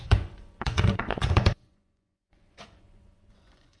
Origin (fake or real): fake